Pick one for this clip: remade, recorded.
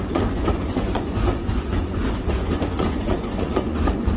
remade